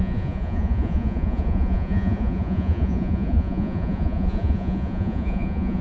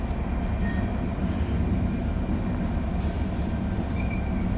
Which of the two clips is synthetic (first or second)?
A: first